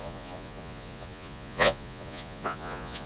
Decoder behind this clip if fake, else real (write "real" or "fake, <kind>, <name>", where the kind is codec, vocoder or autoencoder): fake, vocoder, Vocos